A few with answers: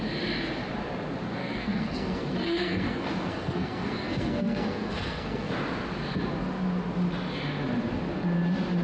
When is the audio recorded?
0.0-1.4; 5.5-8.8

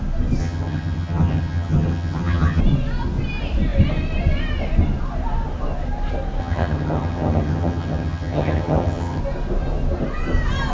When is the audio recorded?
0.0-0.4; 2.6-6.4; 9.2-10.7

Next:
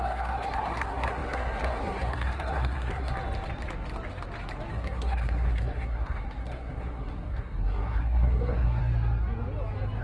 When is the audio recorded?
3.1-4.7; 8.8-10.0

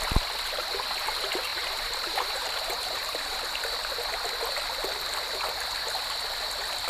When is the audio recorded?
0.0-1.5; 3.4-6.9

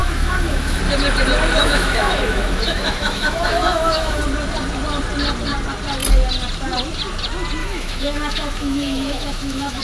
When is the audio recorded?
0.8-1.6; 4.2-7.6